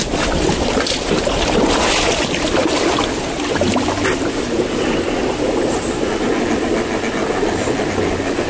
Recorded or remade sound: recorded